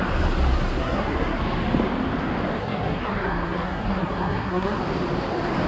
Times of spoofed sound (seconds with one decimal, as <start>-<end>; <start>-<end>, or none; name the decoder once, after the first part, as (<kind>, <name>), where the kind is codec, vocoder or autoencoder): 0.8-1.4 (codec, SNAC); 2.6-4.8